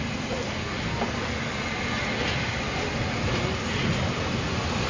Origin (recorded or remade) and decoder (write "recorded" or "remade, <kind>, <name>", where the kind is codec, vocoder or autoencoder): recorded